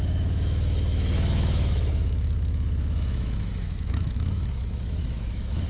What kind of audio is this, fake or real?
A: fake